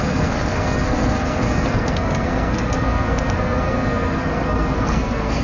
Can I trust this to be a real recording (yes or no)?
no